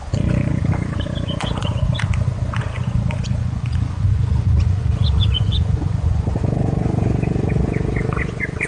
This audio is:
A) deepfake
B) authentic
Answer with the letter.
A